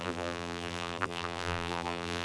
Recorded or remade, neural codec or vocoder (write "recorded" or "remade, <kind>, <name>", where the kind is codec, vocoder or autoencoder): remade, vocoder, BigVGAN v2